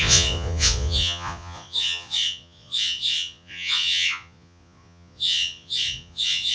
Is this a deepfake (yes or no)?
yes